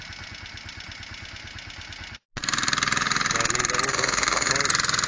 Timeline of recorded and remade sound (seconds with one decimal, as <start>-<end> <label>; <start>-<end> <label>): 0.0-3.9 recorded; 3.9-4.5 remade; 4.5-5.1 recorded